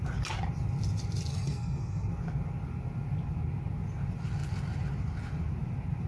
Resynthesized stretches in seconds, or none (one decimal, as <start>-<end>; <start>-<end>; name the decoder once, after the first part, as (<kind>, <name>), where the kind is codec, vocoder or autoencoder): 1.3-2.1 (codec, SNAC)